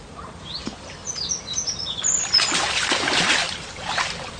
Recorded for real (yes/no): yes